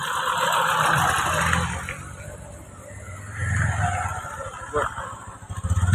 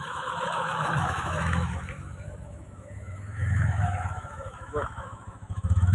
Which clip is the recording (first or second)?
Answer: first